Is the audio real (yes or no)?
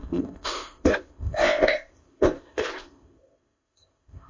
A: no